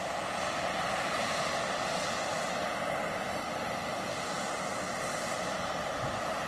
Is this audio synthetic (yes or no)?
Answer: no